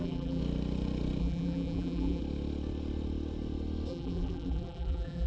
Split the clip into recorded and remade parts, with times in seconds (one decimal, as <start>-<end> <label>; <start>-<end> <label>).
0.0-0.4 remade; 0.4-1.2 recorded; 1.2-2.2 remade; 2.2-3.9 recorded; 3.9-5.3 remade